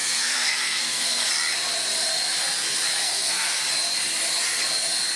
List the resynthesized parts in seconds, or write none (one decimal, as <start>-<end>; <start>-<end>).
0.0-1.3; 3.0-3.6

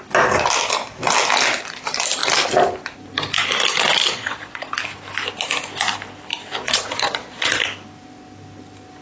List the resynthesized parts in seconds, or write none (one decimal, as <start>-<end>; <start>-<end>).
4.0-4.7; 6.6-7.5

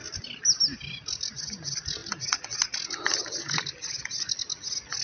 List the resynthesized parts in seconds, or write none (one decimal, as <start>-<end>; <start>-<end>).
none

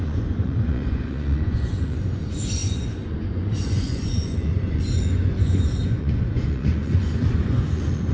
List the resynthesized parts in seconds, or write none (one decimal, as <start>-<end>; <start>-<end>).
0.0-8.1

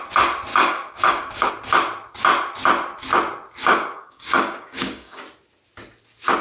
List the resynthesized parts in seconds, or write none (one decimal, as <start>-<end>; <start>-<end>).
0.5-1.5; 3.6-5.2

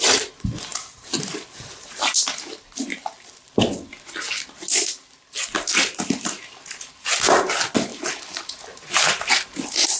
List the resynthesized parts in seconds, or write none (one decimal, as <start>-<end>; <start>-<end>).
0.7-2.2; 5.7-6.9; 7.9-9.3